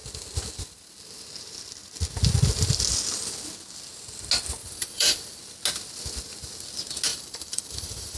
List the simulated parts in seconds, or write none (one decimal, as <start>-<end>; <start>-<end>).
4.6-5.4; 7.1-8.2